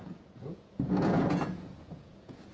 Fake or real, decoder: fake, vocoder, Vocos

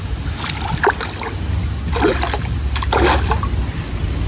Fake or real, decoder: real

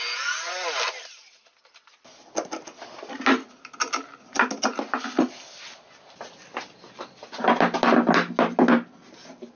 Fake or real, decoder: real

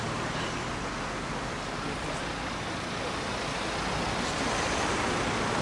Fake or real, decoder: real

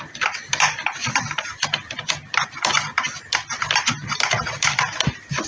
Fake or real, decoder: fake, vocoder, BigVGAN v2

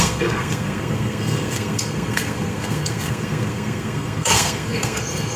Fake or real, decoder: fake, codec, SNAC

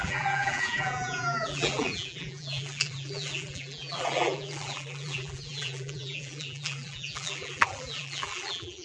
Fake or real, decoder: fake, vocoder, BigVGAN v2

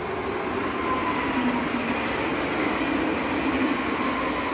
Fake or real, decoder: real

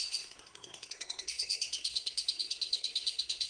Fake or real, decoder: fake, codec, SNAC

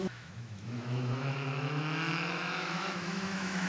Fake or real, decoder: fake, autoencoder, DAC-VAE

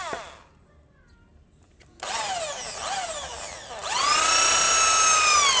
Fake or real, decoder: real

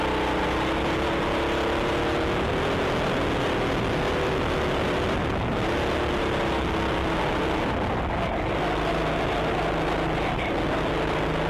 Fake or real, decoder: real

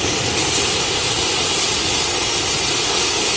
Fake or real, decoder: real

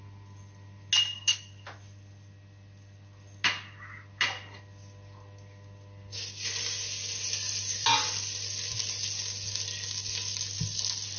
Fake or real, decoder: real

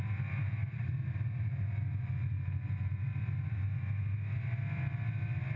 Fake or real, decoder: real